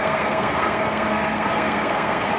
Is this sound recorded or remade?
remade